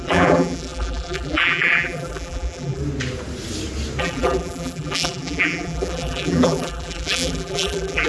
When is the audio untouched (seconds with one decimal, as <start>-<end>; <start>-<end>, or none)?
2.8-4.0